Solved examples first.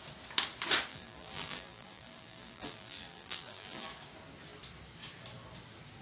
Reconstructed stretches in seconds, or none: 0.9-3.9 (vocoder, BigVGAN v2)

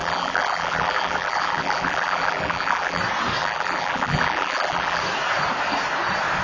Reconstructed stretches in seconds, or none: 0.0-3.0 (vocoder, BigVGAN v2); 3.4-5.0

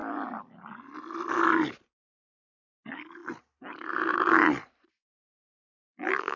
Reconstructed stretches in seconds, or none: 5.6-6.4 (vocoder, BigVGAN v2)

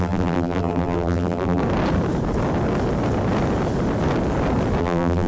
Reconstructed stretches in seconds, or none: 0.0-1.6 (vocoder, BigVGAN v2); 4.8-5.3

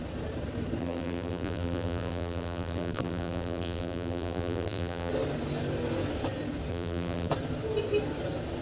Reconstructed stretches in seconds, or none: 0.8-5.1 (vocoder, BigVGAN v2); 6.7-7.3

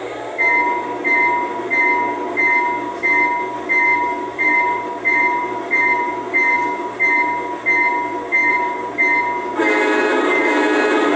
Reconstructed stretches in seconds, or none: 3.9-6.1 (vocoder, BigVGAN v2); 8.4-8.9

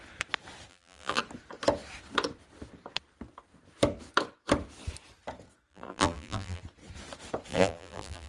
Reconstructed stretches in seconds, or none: 0.7-1.2 (vocoder, BigVGAN v2); 5.7-6.6; 7.5-8.3

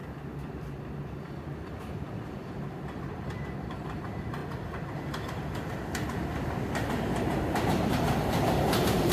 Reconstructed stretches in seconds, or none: 3.1-4.4 (vocoder, BigVGAN v2); 7.9-9.1